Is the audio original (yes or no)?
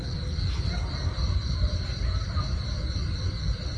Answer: yes